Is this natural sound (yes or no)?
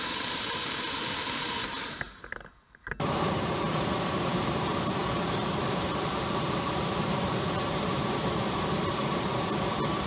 no